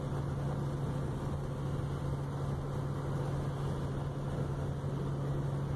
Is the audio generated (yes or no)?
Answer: no